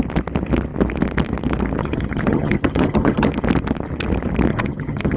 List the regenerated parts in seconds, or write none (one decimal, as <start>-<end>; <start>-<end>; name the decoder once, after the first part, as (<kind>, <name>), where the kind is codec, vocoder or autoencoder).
1.8-3.3 (vocoder, HiFi-GAN); 4.5-5.2